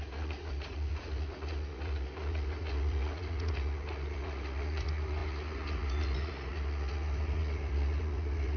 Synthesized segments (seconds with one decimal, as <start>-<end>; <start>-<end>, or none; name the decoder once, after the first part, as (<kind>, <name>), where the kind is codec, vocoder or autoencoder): 0.0-8.6 (vocoder, Vocos)